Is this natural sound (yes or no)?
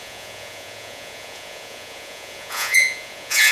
no